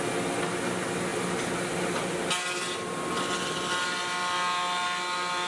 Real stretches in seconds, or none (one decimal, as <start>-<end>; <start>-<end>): 0.0-5.5